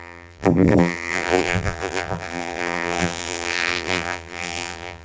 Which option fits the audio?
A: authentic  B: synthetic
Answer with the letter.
B